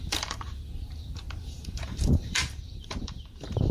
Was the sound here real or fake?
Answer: fake